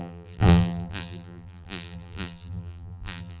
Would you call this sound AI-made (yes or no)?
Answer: yes